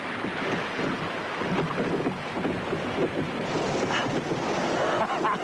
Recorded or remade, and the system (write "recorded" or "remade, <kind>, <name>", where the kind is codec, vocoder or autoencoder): recorded